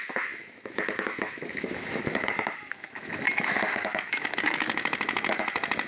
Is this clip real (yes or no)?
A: no